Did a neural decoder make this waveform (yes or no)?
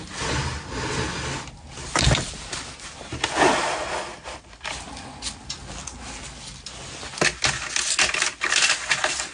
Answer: no